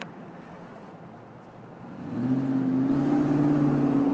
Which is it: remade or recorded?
recorded